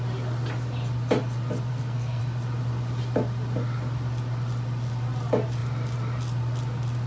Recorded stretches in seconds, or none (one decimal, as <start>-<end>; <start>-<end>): 0.0-1.7; 2.2-7.1